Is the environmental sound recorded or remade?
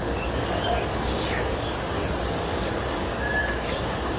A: remade